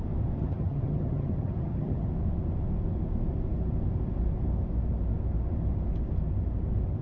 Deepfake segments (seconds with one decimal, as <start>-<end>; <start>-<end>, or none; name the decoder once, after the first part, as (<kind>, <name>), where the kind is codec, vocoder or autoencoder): 0.4-2.1 (vocoder, HiFi-GAN)